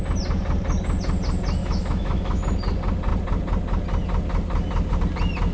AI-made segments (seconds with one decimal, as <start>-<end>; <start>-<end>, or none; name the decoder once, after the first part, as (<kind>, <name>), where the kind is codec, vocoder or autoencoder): 1.6-2.4 (autoencoder, DAC-VAE)